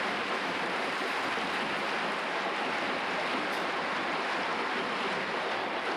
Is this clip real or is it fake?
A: real